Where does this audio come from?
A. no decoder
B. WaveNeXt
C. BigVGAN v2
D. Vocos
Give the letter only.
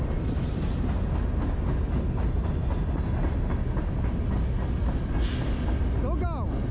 A